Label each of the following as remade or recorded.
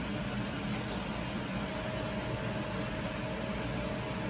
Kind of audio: recorded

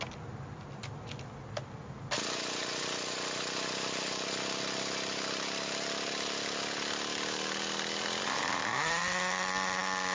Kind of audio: recorded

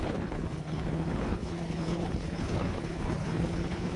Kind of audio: remade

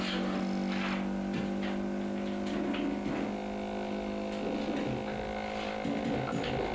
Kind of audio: recorded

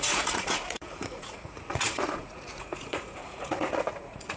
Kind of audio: remade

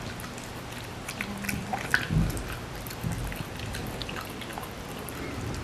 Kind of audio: recorded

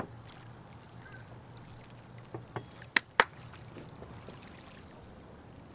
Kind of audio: recorded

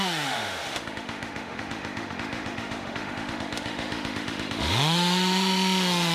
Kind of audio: remade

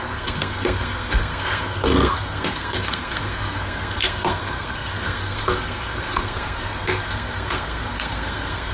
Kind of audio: remade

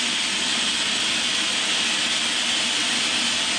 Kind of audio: recorded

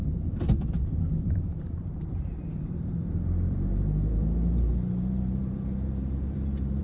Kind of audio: remade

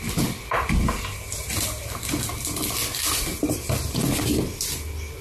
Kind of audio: recorded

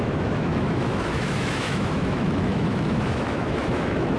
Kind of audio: remade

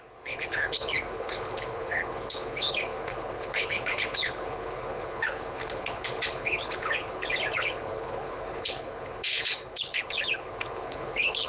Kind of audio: remade